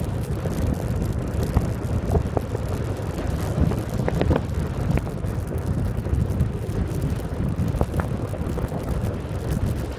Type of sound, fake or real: real